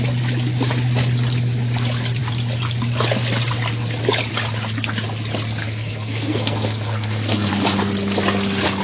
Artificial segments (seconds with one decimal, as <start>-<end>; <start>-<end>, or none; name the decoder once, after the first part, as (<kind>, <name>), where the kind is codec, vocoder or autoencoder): 5.6-7.5 (codec, SNAC)